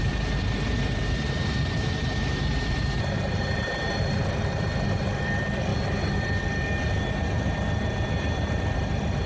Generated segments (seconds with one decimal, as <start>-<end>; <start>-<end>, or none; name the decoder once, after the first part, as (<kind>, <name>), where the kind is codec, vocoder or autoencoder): 0.0-5.7 (vocoder, BigVGAN v2); 7.1-9.3